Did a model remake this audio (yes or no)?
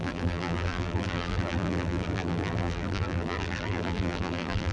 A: yes